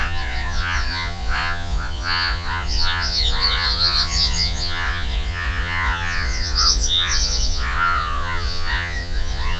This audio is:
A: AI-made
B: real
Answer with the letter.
A